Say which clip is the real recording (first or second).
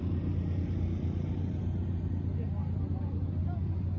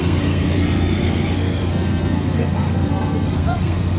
first